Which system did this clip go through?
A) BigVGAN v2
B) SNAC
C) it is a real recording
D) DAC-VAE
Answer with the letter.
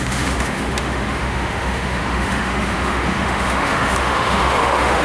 D